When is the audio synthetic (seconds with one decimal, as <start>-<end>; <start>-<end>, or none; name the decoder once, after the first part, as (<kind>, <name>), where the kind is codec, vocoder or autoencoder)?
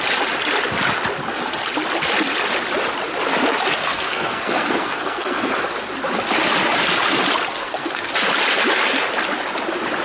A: 3.8-5.5 (codec, SNAC); 7.5-8.1